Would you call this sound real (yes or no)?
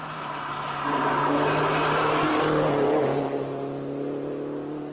yes